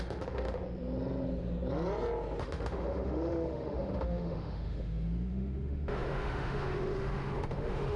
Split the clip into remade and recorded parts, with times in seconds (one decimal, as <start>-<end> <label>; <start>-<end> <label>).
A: 0.0-0.6 remade; 0.6-2.4 recorded; 2.4-8.0 remade